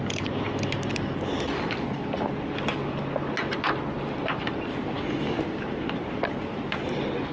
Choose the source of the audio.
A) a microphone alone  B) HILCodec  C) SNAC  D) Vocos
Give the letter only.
A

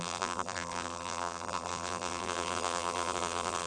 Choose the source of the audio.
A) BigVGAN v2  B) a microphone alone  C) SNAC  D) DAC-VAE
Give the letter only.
A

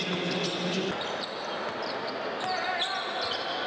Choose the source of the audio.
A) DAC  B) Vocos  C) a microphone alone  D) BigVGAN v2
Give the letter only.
C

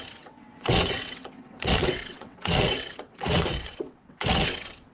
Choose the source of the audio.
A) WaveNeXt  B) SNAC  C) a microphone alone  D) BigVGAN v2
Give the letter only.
A